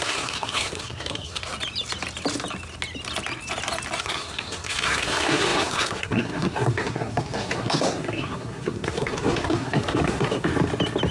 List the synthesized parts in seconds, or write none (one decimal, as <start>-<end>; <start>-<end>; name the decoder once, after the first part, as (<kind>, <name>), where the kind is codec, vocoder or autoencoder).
0.0-1.4 (codec, SNAC); 4.0-10.5